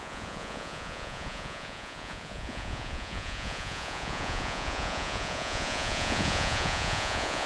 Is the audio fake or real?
fake